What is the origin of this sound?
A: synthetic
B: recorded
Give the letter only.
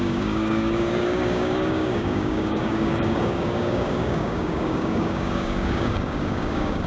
A